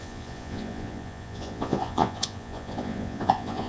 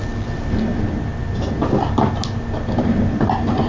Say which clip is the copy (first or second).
first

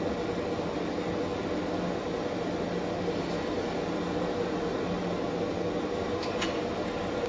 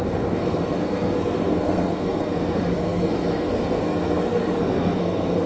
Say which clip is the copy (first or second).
second